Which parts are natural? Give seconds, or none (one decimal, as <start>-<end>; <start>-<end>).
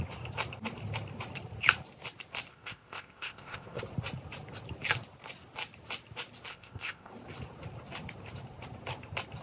0.0-2.5; 3.8-6.5; 7.1-9.4